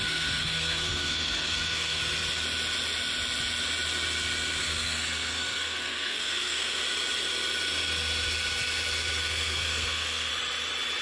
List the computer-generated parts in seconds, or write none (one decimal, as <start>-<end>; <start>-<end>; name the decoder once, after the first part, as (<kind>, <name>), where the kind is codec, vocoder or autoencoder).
0.0-2.0 (codec, SNAC); 4.6-6.8; 9.2-10.3